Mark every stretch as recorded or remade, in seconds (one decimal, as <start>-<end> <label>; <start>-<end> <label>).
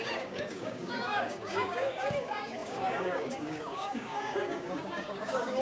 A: 0.0-5.6 remade